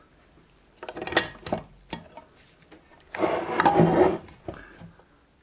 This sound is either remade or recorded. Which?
recorded